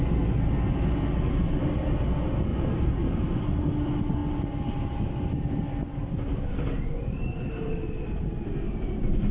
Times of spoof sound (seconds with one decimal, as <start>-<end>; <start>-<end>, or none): 2.5-3.4